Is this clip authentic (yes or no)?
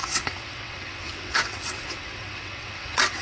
no